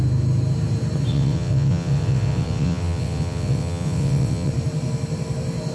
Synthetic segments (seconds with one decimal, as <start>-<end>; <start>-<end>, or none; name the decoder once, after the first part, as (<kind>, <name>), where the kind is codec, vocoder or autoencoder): 1.1-4.5 (vocoder, WaveNeXt)